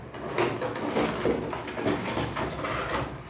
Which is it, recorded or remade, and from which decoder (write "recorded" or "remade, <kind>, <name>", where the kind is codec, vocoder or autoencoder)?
recorded